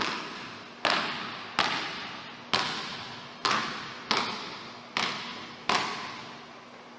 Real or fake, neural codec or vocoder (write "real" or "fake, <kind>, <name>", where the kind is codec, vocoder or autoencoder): real